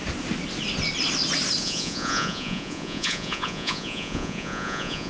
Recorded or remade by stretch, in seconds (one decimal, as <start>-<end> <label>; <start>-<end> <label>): 0.0-1.6 recorded; 1.6-5.1 remade